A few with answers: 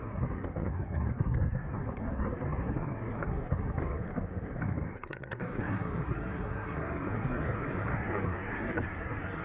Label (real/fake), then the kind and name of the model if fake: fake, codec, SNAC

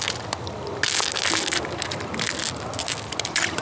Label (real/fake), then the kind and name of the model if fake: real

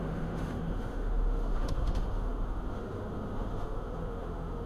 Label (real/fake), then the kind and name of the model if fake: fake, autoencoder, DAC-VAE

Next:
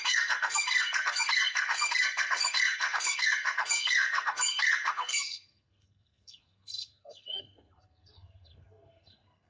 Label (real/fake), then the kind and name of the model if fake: fake, codec, SNAC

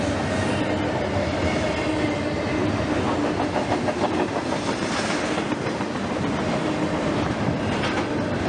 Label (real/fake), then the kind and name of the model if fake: real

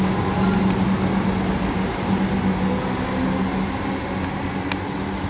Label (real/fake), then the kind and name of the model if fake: real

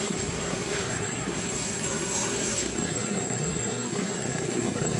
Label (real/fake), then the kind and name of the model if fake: fake, codec, SNAC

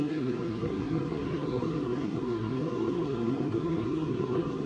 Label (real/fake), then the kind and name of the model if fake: fake, codec, SNAC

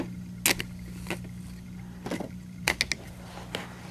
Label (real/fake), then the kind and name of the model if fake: real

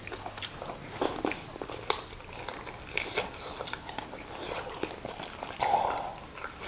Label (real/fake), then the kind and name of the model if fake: real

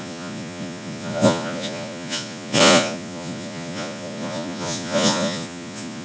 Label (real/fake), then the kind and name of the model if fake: fake, vocoder, Vocos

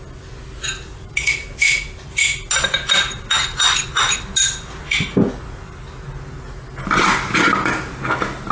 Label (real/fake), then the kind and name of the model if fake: real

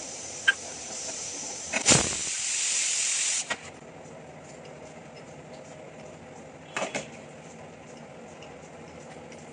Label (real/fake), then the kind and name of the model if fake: fake, vocoder, BigVGAN v2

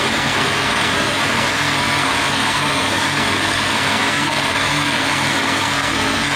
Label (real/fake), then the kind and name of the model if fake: fake, codec, SNAC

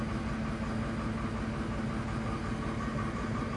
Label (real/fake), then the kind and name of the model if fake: real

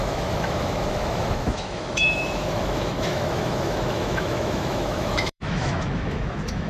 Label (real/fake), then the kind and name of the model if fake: fake, autoencoder, DAC-VAE